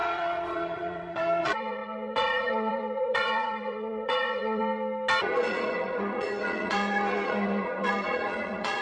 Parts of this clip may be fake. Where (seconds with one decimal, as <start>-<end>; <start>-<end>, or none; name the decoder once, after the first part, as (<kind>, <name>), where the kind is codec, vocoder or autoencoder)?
0.0-4.6 (vocoder, Vocos); 5.2-8.8